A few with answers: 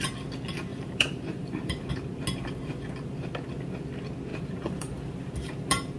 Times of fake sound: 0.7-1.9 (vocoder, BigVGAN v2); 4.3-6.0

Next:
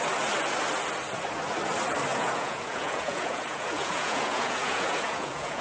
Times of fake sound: 2.1-5.6 (vocoder, Vocos)

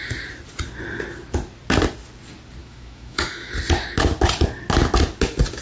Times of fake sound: 2.6-3.5 (autoencoder, DAC-VAE)

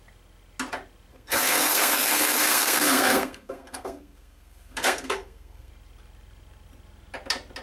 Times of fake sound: 1.1-5.7 (codec, SNAC)

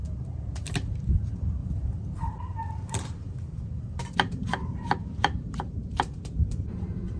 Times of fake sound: 0.0-7.2 (vocoder, BigVGAN v2)

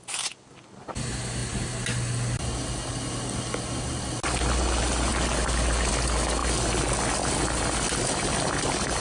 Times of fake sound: none

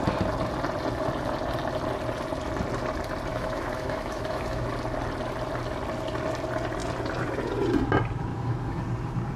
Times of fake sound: 3.3-4.7 (autoencoder, DAC-VAE); 8.3-8.8